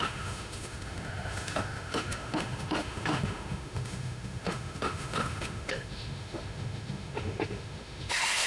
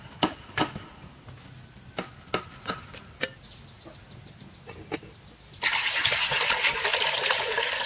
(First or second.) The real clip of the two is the second